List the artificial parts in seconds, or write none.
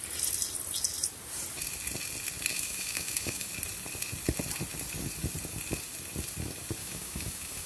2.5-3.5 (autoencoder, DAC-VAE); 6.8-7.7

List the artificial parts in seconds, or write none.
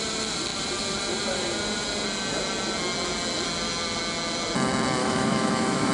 5.0-5.9 (autoencoder, DAC-VAE)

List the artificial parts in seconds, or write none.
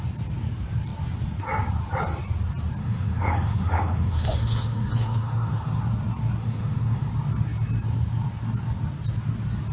2.8-5.8 (autoencoder, DAC-VAE); 6.4-7.1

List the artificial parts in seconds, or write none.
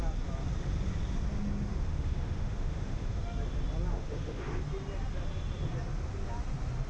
1.7-3.2 (autoencoder, DAC-VAE); 3.9-4.6